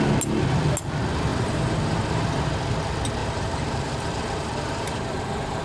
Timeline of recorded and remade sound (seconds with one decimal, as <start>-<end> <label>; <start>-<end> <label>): 0.0-1.3 recorded; 1.3-2.2 remade; 2.2-3.2 recorded; 3.2-5.6 remade